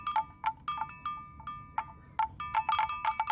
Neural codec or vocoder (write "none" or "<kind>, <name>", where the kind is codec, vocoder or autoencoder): none